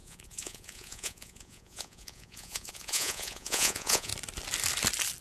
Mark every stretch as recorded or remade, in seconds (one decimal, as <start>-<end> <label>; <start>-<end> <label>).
0.0-4.1 remade; 4.1-5.2 recorded